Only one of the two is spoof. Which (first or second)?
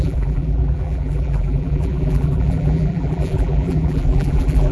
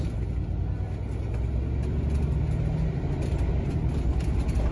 first